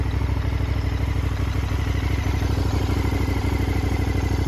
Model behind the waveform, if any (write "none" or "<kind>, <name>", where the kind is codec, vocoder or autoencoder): none